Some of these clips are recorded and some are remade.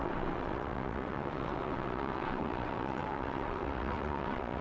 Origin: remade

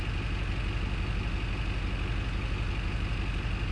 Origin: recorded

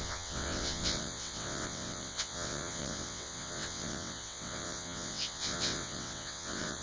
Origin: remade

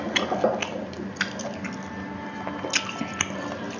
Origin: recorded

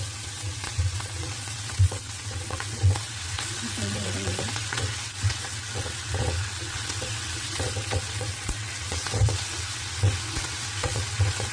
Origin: remade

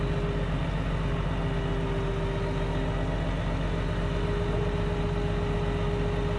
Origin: recorded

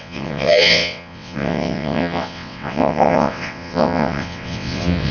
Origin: remade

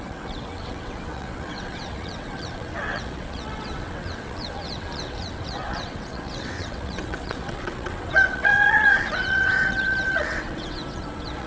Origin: remade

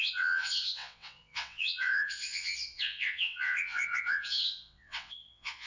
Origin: remade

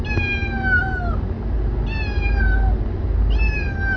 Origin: recorded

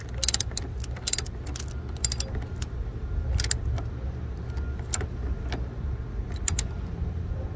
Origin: recorded